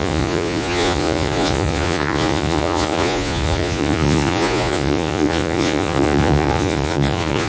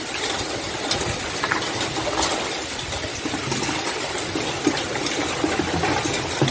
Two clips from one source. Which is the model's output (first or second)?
first